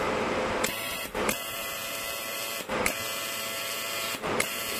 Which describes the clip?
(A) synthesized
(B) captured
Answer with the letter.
A